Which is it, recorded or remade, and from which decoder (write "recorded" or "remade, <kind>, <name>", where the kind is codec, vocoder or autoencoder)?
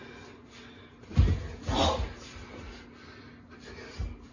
recorded